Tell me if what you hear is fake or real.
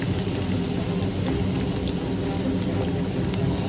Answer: real